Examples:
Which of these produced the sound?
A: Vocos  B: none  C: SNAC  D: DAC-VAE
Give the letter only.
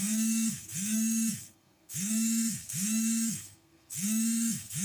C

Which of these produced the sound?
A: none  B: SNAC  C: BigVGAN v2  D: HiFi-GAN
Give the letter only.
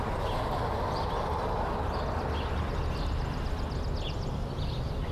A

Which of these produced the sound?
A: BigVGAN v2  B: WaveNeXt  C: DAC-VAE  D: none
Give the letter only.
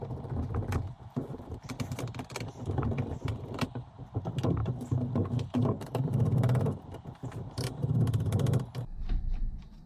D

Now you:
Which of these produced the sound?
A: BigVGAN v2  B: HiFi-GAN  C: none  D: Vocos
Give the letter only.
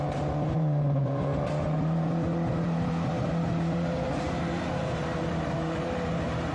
A